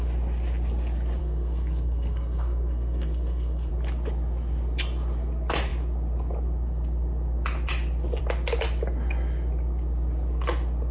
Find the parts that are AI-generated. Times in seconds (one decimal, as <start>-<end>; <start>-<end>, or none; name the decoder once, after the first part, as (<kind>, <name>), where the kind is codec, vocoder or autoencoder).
1.2-3.7 (codec, SNAC)